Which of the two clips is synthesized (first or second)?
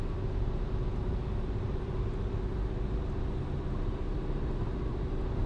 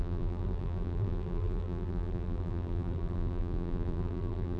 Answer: second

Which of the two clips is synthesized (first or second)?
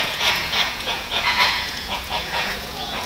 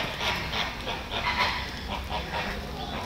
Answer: first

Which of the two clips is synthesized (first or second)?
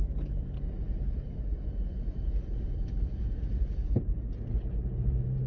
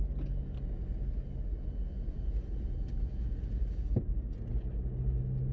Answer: first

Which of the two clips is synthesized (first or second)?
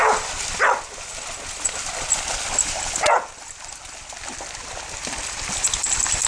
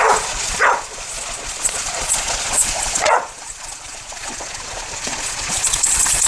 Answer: second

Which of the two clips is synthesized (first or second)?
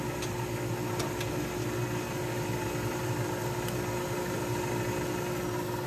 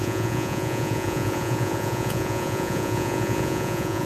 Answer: second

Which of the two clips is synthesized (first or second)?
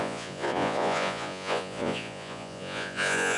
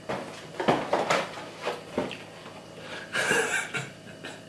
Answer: first